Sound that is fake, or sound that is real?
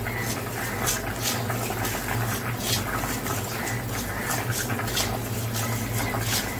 real